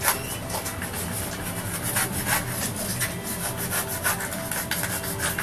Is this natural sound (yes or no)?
yes